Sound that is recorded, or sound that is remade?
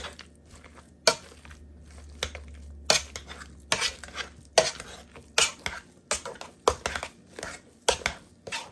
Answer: recorded